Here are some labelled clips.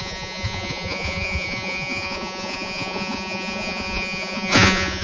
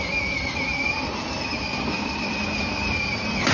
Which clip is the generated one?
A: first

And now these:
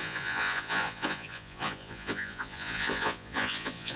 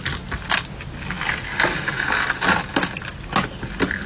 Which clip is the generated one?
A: first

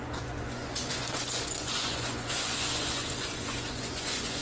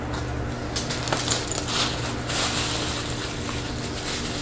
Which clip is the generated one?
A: first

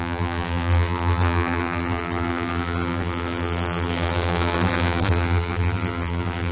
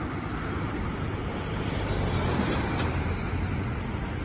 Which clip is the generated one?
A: first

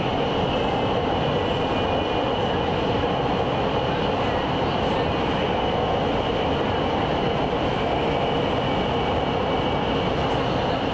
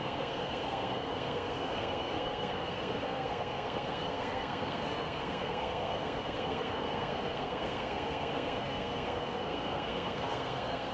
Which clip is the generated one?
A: second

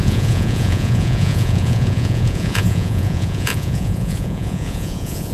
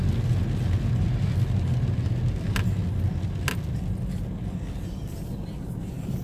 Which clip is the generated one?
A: first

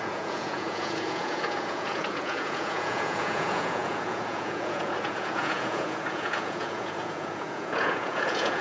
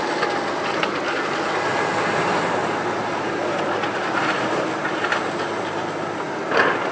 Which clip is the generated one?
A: first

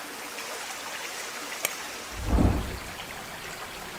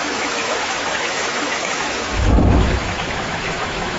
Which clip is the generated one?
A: second